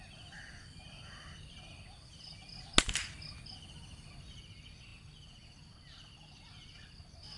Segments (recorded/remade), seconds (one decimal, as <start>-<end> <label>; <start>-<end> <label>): 0.0-7.4 recorded